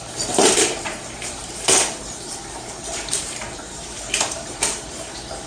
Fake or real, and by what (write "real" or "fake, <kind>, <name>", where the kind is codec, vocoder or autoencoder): fake, vocoder, BigVGAN v2